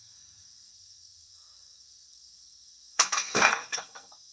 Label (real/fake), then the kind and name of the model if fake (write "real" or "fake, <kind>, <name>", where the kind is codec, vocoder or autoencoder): fake, codec, SNAC